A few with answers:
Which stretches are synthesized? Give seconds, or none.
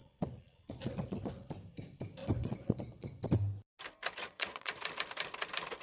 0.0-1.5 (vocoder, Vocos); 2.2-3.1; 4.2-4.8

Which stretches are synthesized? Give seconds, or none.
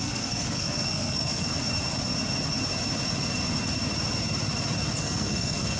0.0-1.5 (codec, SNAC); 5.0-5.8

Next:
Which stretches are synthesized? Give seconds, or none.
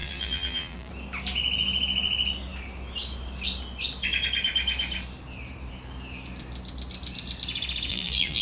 0.0-0.9 (vocoder, BigVGAN v2); 7.9-8.4